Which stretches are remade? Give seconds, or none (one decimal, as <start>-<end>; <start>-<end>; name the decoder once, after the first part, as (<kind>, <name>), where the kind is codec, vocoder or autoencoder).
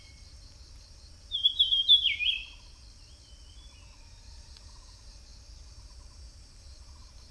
0.0-2.4 (vocoder, BigVGAN v2); 4.3-7.3